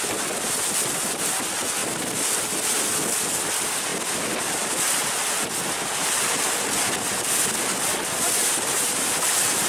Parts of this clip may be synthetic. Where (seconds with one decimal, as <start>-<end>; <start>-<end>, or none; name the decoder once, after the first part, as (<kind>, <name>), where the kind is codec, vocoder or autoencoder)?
8.4-9.0 (vocoder, BigVGAN v2)

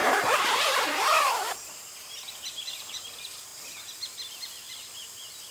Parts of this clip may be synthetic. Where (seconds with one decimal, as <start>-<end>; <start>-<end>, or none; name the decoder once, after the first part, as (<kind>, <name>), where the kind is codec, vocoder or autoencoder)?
0.0-3.0 (vocoder, BigVGAN v2)

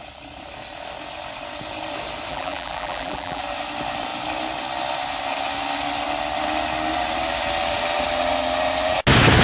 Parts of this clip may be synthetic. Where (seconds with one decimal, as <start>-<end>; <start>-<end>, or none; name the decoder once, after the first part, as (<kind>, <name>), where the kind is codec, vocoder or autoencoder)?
2.3-3.4 (vocoder, BigVGAN v2)

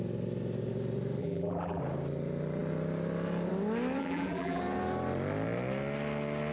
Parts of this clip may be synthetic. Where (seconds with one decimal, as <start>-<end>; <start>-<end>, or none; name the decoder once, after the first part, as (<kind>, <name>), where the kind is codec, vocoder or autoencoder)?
1.2-1.8 (vocoder, BigVGAN v2); 4.0-4.6